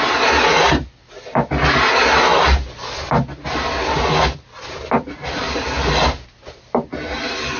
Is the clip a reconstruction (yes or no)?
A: no